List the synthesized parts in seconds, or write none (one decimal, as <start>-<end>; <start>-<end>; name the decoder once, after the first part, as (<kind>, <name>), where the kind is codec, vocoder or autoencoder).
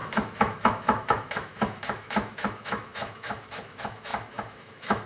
0.0-5.1 (autoencoder, DAC-VAE)